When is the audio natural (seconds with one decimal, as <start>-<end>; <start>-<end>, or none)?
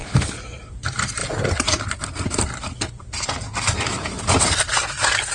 0.0-0.7; 1.2-4.4